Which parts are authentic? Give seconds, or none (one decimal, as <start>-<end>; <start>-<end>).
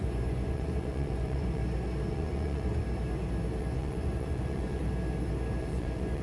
1.6-2.1; 2.8-3.6; 4.8-5.6